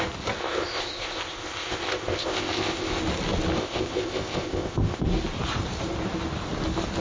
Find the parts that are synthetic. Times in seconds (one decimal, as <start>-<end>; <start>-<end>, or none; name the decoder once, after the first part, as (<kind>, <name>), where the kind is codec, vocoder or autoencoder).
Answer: 0.4-3.0 (codec, ZipCodec); 3.6-5.1